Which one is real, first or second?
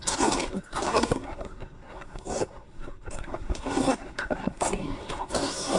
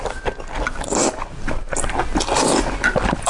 second